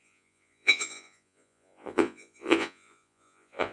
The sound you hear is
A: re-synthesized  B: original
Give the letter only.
A